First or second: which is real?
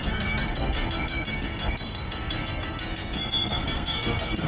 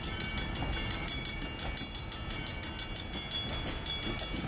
second